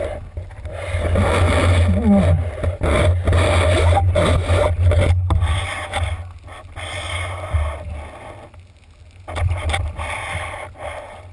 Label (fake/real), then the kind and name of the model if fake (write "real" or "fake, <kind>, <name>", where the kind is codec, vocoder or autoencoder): real